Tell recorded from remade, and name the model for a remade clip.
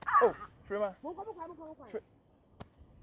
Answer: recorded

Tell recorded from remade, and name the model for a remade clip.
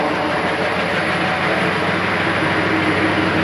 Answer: recorded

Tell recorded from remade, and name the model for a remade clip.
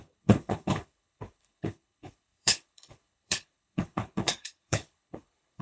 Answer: remade, codec, HILCodec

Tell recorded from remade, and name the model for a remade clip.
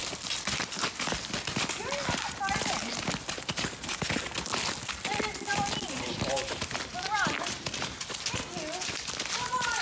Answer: recorded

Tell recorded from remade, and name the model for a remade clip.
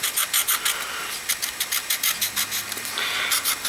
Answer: recorded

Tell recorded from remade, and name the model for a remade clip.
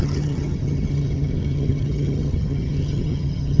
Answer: remade, vocoder, HiFi-GAN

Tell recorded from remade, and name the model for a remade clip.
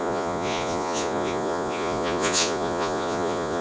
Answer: remade, vocoder, Vocos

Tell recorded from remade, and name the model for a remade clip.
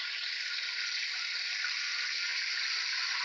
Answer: remade, vocoder, BigVGAN v2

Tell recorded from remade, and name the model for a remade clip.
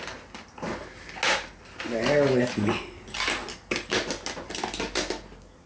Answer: recorded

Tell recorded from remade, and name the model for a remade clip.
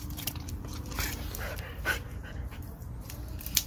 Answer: remade, vocoder, BigVGAN v2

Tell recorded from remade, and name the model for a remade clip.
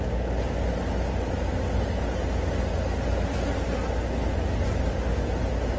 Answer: recorded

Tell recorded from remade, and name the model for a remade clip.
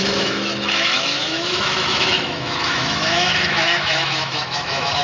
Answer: remade, autoencoder, DAC-VAE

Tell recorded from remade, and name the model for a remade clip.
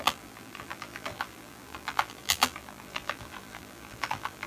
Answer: remade, vocoder, BigVGAN v2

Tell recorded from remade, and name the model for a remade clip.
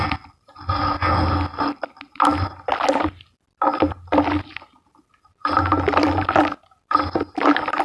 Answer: recorded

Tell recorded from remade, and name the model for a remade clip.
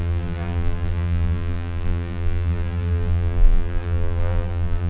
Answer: remade, vocoder, BigVGAN v2